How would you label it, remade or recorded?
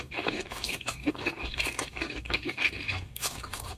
remade